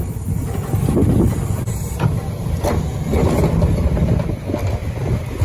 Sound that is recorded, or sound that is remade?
recorded